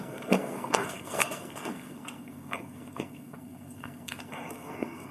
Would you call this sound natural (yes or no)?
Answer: no